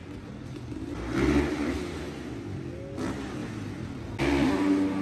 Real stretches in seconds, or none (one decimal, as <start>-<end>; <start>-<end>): 0.0-5.0